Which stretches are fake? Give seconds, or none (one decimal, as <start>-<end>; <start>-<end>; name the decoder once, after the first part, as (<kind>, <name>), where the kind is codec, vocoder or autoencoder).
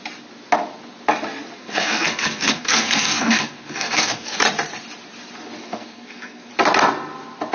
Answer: 1.6-4.4 (codec, SNAC); 5.6-6.5